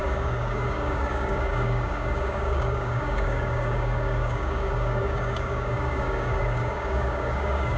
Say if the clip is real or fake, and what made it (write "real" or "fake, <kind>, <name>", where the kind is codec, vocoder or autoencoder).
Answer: fake, codec, DAC